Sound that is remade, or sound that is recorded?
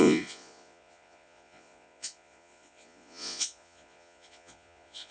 remade